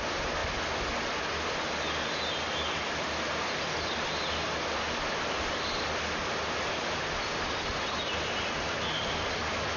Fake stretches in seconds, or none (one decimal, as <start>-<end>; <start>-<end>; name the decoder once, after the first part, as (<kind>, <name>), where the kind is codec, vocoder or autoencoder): none